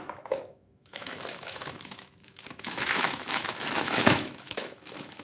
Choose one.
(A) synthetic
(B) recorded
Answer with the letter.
A